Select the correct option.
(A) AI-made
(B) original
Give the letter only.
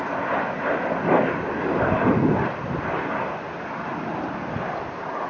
B